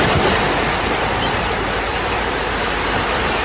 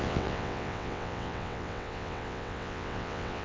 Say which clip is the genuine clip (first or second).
first